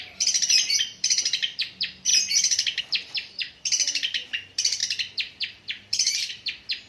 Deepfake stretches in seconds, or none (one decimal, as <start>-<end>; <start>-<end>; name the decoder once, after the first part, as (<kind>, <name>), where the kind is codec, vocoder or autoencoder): 0.0-2.1 (vocoder, BigVGAN v2); 2.8-6.9